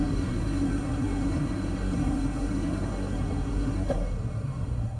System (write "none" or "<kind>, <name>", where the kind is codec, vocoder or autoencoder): codec, SNAC